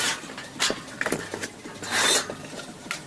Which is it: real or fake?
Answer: fake